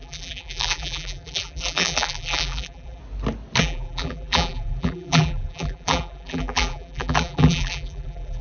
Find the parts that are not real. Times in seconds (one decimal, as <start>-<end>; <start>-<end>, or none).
0.0-3.0; 3.6-8.4